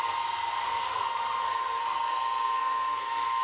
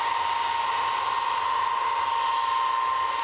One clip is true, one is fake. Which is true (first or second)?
second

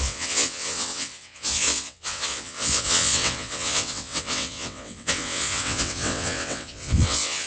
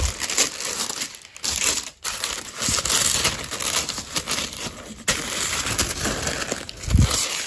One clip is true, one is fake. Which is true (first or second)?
second